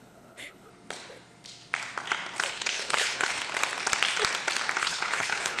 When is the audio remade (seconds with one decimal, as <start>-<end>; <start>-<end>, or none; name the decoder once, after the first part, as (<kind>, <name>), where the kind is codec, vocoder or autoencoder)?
0.0-0.7 (codec, HILCodec); 2.5-3.4; 4.8-5.6